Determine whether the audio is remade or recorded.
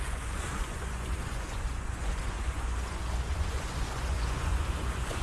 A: remade